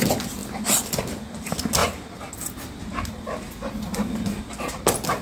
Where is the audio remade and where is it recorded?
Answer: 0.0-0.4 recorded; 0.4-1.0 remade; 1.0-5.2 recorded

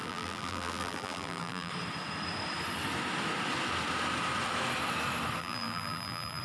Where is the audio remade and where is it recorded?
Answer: 0.0-1.7 remade; 1.7-5.4 recorded; 5.4-6.4 remade

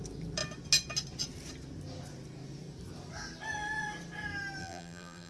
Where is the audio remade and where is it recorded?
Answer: 0.0-4.6 recorded; 4.6-5.3 remade

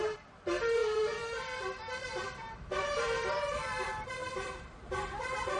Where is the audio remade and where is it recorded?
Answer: 0.0-5.6 remade